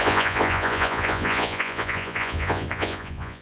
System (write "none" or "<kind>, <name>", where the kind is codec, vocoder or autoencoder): vocoder, Vocos